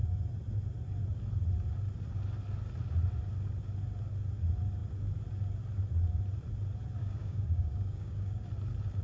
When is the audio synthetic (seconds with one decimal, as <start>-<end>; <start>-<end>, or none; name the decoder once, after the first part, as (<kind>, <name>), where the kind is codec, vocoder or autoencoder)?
7.0-8.4 (codec, DAC)